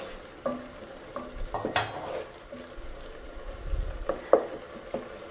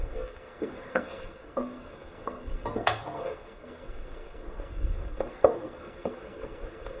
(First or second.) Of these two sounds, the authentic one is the first